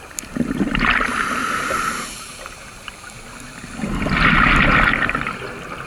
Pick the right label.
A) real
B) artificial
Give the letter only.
A